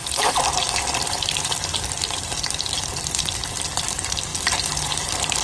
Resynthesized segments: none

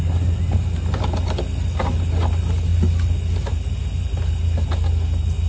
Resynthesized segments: none

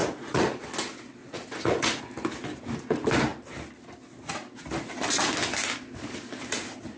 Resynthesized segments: 0.0-0.6 (vocoder, Vocos); 1.2-2.0

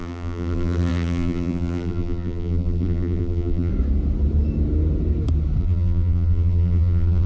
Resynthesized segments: 0.0-3.7 (vocoder, BigVGAN v2); 5.6-7.3

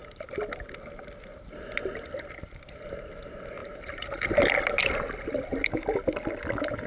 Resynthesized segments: none